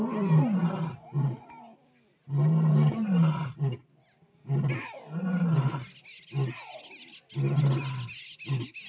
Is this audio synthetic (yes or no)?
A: no